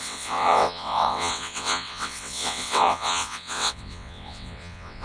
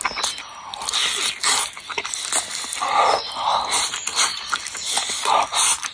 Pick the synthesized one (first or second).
first